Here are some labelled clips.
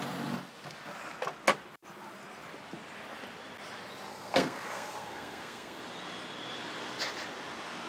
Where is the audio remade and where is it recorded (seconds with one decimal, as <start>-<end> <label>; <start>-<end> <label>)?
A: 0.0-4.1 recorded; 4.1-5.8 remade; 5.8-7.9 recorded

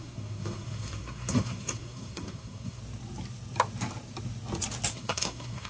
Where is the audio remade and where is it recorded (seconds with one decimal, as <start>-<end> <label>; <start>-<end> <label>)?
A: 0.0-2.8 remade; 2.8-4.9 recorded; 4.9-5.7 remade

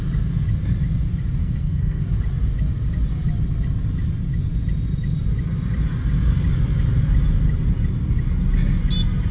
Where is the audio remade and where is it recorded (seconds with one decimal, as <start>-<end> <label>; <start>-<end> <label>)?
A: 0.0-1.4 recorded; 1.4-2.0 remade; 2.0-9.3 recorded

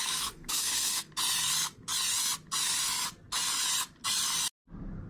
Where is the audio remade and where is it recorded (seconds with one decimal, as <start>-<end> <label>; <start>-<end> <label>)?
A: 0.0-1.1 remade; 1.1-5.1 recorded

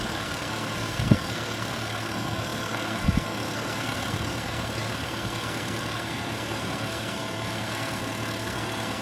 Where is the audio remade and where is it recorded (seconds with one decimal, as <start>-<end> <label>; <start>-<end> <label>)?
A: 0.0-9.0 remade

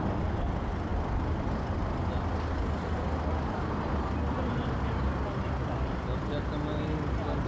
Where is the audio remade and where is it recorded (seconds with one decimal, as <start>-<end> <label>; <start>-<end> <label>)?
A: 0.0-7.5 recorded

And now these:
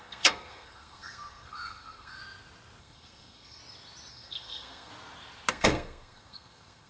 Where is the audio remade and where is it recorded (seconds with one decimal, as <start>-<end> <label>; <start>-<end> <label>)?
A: 0.0-2.2 remade; 2.2-2.8 recorded; 2.8-3.6 remade; 3.6-4.1 recorded; 4.1-4.9 remade; 4.9-5.5 recorded; 5.5-6.9 remade